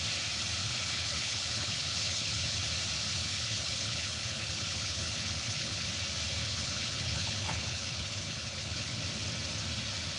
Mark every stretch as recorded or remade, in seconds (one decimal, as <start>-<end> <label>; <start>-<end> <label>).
0.0-0.6 recorded; 0.6-2.7 remade; 2.7-3.2 recorded; 3.2-5.9 remade; 5.9-6.4 recorded; 6.4-9.0 remade; 9.0-10.2 recorded